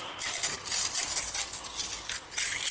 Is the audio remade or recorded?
recorded